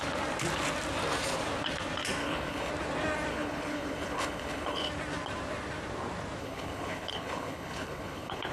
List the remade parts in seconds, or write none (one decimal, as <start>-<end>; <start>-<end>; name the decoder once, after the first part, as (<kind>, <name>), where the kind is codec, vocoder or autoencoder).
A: 2.2-2.7 (codec, HILCodec); 3.3-4.9; 6.4-8.5